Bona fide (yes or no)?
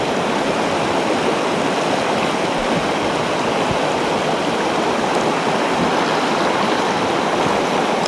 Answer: yes